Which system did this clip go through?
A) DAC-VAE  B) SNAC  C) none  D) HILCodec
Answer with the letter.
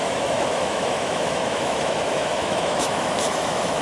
A